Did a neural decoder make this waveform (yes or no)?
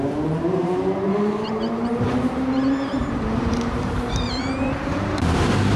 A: yes